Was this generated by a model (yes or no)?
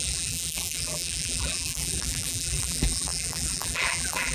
yes